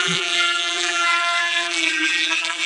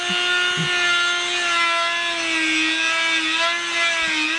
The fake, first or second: first